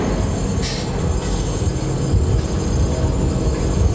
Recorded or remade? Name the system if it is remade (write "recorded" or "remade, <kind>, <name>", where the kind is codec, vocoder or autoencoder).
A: recorded